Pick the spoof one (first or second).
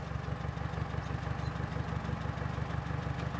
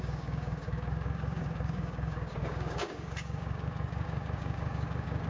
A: second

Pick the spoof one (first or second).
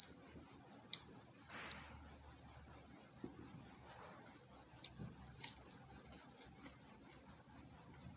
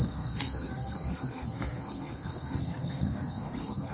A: second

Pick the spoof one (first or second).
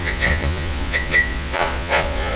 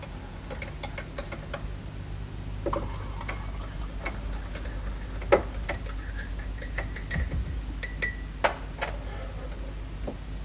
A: first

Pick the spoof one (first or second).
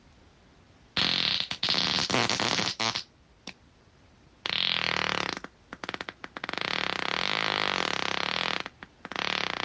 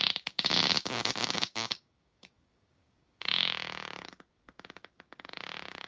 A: second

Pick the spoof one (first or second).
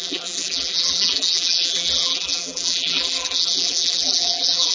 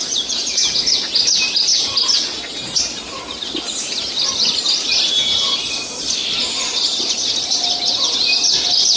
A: first